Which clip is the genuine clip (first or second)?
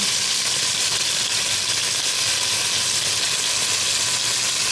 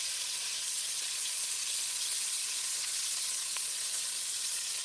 first